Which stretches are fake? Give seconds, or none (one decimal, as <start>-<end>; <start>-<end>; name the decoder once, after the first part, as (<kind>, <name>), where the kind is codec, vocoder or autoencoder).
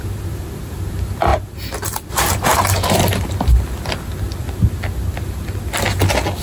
none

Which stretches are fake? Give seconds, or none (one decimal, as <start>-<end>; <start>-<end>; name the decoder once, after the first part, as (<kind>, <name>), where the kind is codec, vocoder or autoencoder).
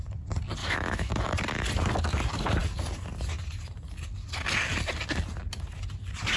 0.6-1.1 (autoencoder, DAC-VAE)